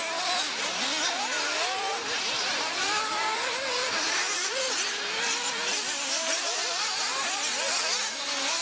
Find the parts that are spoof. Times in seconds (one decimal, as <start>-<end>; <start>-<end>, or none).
1.9-3.0; 3.8-4.7